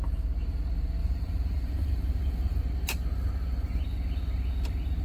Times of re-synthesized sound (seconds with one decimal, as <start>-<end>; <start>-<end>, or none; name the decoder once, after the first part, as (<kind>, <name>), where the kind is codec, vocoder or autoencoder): 1.0-2.6 (vocoder, BigVGAN v2)